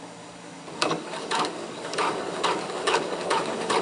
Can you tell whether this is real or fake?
fake